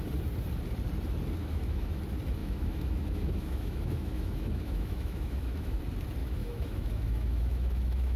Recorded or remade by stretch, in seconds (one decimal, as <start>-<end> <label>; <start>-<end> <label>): 0.0-1.4 recorded; 1.4-2.0 remade; 2.0-2.4 recorded; 2.4-5.8 remade; 5.8-6.2 recorded; 6.2-8.2 remade